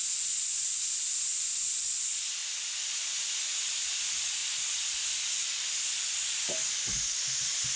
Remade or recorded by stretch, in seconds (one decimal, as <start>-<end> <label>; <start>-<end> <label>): 0.0-7.8 recorded